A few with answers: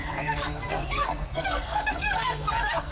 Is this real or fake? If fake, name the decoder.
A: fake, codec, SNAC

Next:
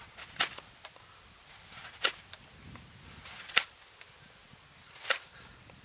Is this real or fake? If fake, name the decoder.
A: real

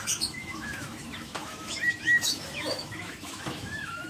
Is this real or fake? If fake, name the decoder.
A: fake, autoencoder, DAC-VAE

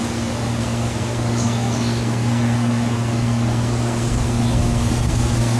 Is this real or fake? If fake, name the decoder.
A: fake, codec, SNAC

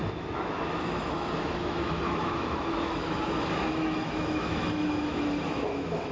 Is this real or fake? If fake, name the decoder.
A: fake, autoencoder, DAC-VAE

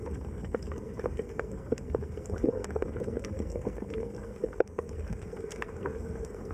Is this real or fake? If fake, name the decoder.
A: fake, codec, SNAC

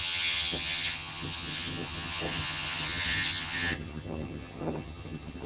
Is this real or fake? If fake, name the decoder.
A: fake, vocoder, HiFi-GAN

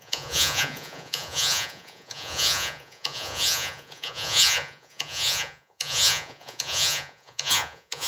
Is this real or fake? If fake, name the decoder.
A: fake, vocoder, Vocos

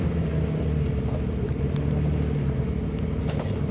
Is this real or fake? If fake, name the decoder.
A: real